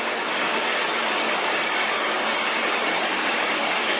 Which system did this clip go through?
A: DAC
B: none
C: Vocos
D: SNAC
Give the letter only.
A